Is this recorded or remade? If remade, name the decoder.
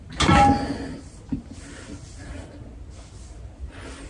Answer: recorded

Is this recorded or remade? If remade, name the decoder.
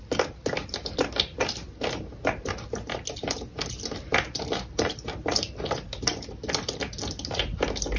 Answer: recorded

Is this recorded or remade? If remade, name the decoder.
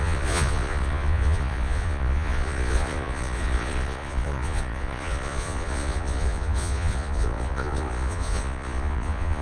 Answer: remade, vocoder, Vocos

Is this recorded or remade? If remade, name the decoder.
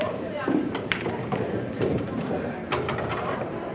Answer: remade, vocoder, BigVGAN v2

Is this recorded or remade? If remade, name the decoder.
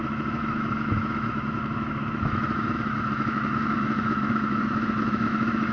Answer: remade, autoencoder, DAC-VAE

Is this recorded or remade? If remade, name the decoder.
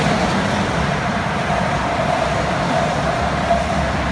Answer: remade, vocoder, BigVGAN v2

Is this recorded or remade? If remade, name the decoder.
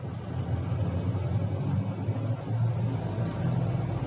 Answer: recorded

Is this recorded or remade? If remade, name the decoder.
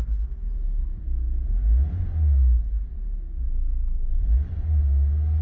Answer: recorded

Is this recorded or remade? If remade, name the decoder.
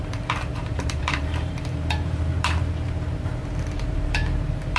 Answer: remade, vocoder, BigVGAN v2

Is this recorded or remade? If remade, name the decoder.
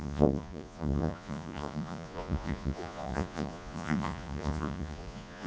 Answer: remade, vocoder, Vocos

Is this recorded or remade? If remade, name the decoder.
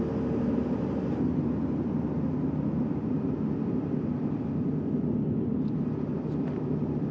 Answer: recorded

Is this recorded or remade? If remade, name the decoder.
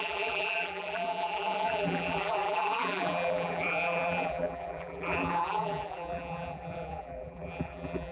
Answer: remade, vocoder, BigVGAN v2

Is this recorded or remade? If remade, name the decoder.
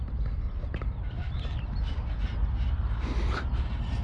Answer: recorded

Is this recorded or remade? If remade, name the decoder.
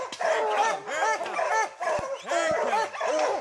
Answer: recorded